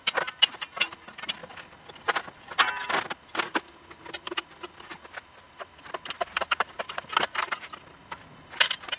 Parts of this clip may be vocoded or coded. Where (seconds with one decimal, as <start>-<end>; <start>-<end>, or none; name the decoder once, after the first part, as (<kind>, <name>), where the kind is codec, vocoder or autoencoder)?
none